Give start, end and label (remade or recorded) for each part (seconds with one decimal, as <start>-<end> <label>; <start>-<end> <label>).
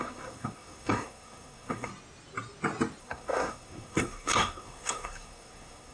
0.0-1.9 remade; 1.9-3.0 recorded; 3.0-5.9 remade